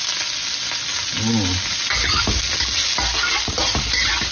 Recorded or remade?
recorded